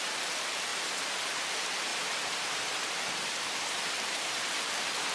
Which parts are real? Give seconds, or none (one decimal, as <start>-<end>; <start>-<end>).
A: 0.0-0.7; 1.4-1.9; 4.5-5.1